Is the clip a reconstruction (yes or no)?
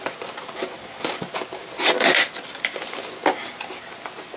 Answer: no